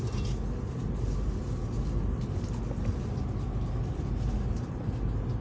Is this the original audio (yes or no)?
yes